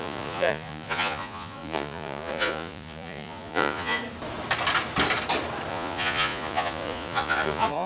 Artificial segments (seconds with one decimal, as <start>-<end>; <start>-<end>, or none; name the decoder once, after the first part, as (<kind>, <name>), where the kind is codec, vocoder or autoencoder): 0.0-4.0 (vocoder, Vocos); 5.7-7.9